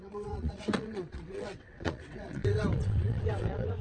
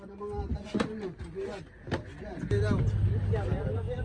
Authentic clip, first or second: second